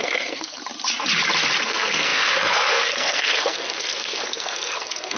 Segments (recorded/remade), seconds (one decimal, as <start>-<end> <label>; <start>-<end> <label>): 0.0-0.6 remade; 0.6-1.6 recorded; 1.6-5.2 remade